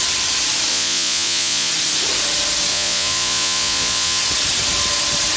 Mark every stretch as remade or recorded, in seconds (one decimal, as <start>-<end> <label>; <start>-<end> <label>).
0.0-0.7 recorded; 0.7-1.7 remade; 1.7-2.7 recorded; 2.7-4.2 remade; 4.2-5.4 recorded